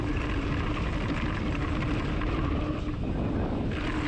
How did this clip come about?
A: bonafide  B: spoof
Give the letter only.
A